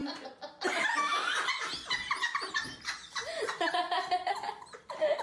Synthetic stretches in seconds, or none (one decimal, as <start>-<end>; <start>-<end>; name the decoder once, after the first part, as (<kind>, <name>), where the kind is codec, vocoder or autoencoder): none